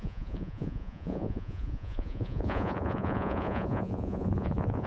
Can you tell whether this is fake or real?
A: fake